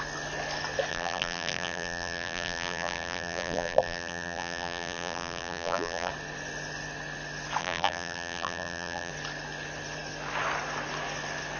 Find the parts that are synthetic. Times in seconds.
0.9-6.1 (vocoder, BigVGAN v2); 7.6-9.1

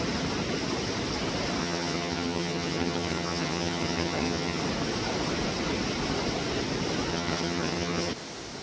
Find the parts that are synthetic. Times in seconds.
1.6-4.6 (vocoder, HiFi-GAN); 7.1-8.1